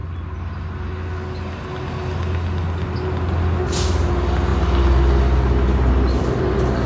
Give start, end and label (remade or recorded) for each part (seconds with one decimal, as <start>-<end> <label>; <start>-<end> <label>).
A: 0.0-6.9 recorded